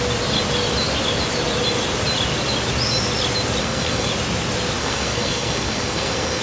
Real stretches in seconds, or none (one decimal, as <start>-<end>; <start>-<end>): 0.0-3.6; 4.1-4.8